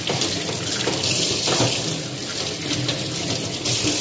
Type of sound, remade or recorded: recorded